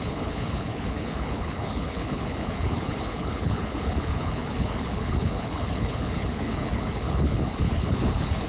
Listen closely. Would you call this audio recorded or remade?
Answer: remade